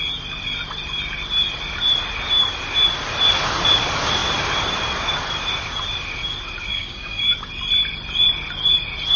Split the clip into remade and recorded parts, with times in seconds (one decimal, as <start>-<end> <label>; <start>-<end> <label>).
0.0-6.7 recorded; 6.7-7.3 remade; 7.3-9.2 recorded